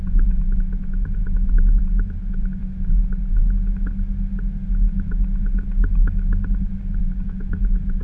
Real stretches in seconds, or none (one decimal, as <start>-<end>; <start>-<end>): 3.4-7.0